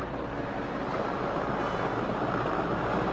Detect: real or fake real